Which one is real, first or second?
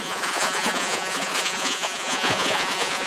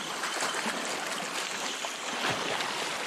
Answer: second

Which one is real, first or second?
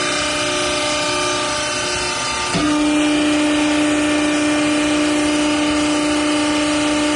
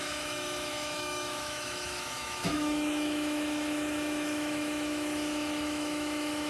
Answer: first